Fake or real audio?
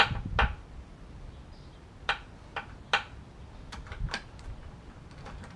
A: real